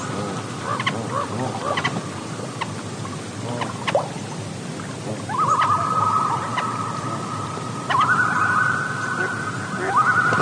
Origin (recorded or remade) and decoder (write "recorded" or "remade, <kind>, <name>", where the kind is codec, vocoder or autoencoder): recorded